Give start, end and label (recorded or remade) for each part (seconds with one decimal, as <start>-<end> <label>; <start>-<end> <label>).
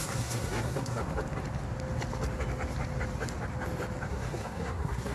0.0-1.0 remade; 1.0-4.1 recorded; 4.1-5.1 remade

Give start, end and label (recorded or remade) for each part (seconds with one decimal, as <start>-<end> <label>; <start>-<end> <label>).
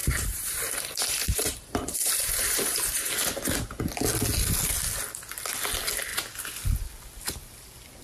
0.0-3.1 remade; 3.1-8.0 recorded